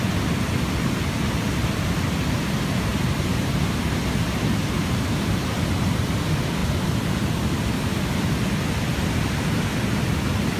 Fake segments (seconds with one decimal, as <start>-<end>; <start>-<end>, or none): 2.9-6.0

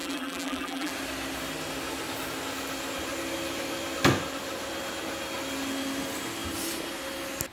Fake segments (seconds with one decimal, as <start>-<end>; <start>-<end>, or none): 0.0-0.9

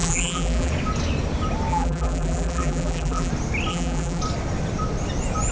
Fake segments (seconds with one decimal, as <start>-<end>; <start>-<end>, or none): 0.0-0.7; 1.7-3.3; 3.7-4.2

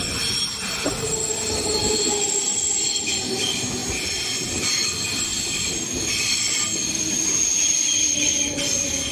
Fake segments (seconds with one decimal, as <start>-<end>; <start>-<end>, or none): none

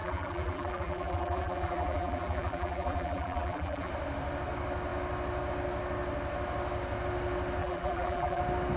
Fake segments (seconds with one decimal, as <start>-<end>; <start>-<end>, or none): 0.0-3.9; 7.6-8.4

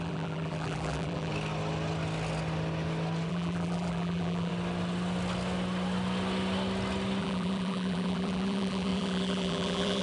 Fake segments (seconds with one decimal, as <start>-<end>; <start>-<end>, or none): 0.0-1.3; 3.3-4.5; 7.2-10.0

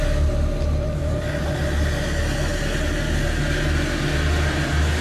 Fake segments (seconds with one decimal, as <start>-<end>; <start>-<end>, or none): 1.0-1.5